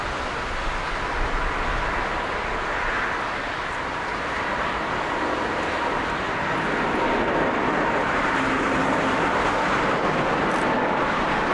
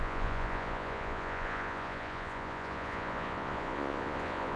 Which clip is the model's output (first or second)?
second